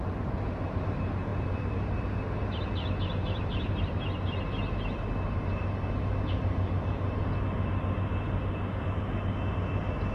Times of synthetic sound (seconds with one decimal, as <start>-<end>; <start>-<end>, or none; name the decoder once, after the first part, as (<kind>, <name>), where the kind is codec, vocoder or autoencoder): none